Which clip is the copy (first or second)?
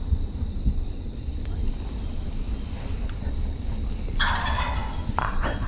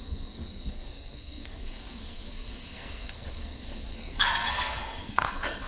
second